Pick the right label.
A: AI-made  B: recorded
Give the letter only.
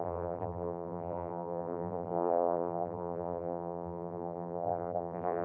A